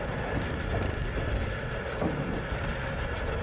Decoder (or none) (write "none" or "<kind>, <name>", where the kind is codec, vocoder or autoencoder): none